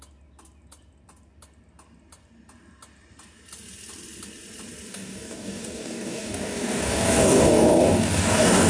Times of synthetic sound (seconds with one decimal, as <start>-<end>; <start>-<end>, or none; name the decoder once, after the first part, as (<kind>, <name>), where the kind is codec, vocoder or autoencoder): 4.9-8.7 (codec, DAC)